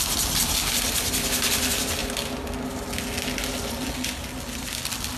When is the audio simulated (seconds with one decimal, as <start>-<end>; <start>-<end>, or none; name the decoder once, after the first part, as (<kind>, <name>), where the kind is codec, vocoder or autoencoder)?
none